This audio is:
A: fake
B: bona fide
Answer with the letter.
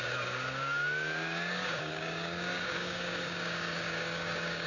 A